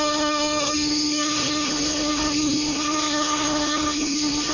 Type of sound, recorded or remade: remade